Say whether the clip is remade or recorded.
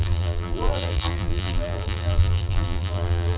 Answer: remade